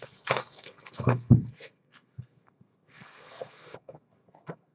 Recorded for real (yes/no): no